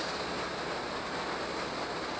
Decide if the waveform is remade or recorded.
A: recorded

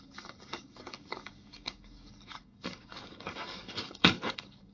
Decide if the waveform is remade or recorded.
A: remade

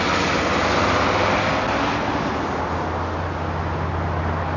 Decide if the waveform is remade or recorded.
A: recorded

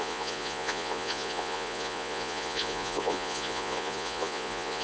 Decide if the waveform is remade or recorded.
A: remade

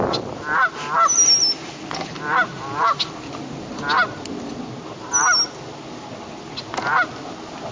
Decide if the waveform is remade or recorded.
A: recorded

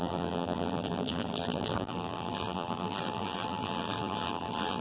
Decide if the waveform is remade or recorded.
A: remade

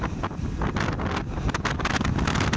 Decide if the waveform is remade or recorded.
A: recorded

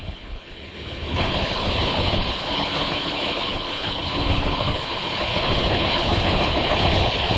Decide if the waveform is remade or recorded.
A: remade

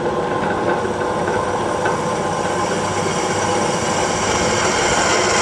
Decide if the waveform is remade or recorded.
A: recorded